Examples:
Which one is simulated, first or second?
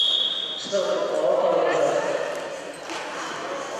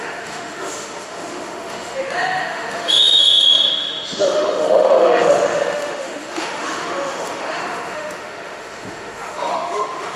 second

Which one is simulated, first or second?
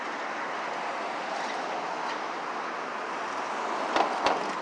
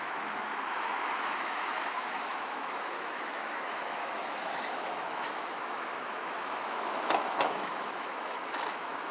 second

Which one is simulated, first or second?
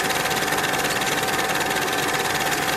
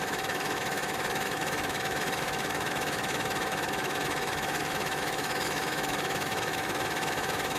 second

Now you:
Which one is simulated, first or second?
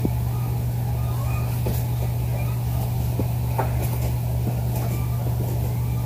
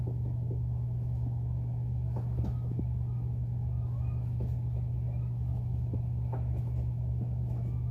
second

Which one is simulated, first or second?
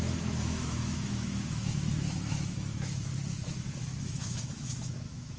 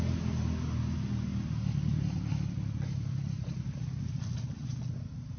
first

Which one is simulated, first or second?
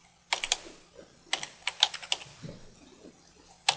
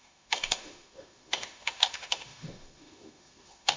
second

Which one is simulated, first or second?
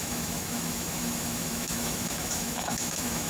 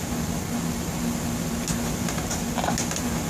first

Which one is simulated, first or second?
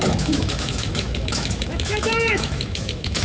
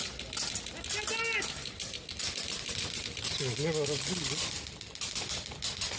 first